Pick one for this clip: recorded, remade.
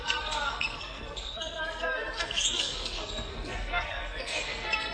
remade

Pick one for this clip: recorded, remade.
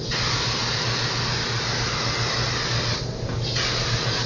recorded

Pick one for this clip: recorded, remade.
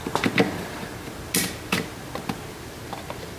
recorded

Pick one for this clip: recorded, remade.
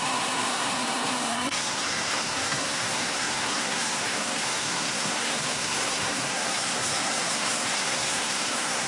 remade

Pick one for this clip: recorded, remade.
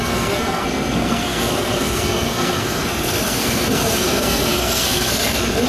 remade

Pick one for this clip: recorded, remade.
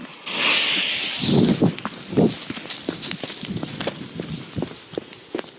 recorded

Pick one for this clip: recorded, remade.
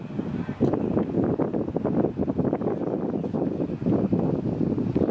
recorded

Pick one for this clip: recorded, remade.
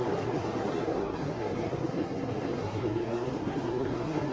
remade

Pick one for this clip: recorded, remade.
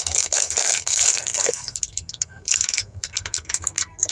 remade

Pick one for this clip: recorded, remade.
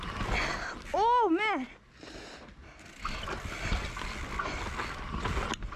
recorded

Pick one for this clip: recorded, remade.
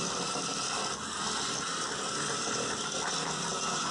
recorded